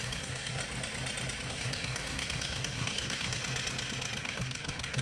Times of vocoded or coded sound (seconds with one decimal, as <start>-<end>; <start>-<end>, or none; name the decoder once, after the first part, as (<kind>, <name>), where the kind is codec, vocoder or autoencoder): 0.0-0.6 (codec, SNAC); 1.5-3.4; 4.2-5.0